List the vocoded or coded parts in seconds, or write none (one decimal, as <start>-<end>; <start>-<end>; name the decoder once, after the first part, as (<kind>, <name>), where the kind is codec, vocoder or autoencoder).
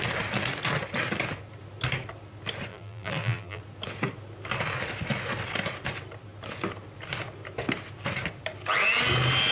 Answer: 2.7-3.6 (vocoder, BigVGAN v2)